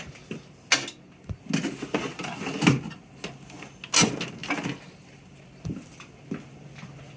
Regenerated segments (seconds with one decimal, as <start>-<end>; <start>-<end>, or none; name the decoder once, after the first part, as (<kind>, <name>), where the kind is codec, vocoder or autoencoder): 4.4-6.0 (vocoder, BigVGAN v2)